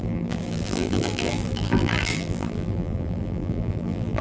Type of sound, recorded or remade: remade